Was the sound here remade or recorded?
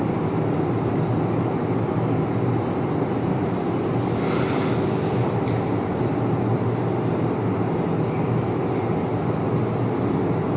recorded